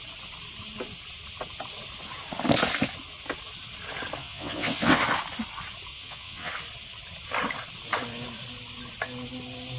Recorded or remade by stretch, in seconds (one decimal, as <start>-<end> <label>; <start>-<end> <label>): 0.0-4.2 recorded; 4.2-5.0 remade; 5.0-5.9 recorded; 5.9-6.5 remade; 6.5-9.8 recorded